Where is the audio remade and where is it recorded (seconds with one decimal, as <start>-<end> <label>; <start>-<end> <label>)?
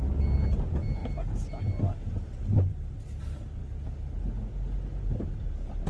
0.0-5.9 recorded